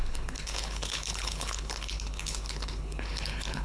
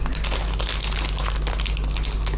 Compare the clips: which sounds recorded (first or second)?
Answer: second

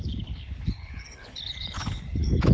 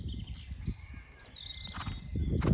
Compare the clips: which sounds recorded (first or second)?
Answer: second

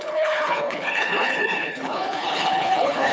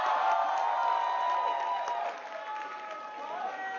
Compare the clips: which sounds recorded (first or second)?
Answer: second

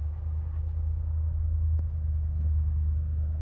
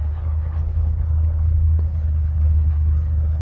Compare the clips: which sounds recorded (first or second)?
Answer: first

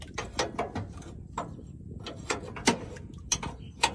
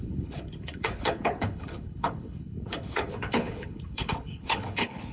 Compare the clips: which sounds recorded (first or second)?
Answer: first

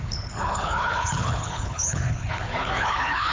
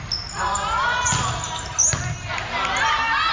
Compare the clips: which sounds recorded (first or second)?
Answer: second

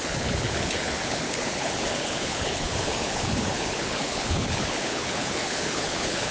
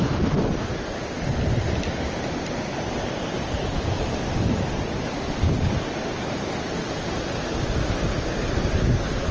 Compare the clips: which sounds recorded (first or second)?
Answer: second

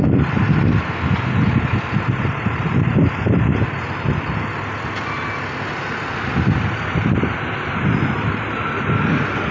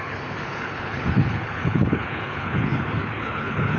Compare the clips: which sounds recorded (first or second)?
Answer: first